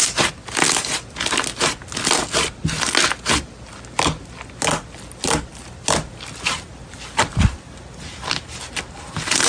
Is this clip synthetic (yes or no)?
no